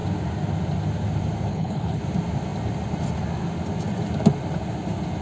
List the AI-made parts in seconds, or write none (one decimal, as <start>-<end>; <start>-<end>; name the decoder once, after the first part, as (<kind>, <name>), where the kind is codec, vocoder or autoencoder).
1.5-2.0 (codec, HILCodec)